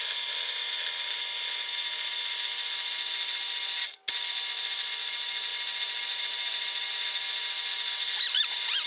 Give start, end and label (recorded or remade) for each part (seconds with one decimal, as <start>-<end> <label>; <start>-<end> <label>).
0.0-8.9 recorded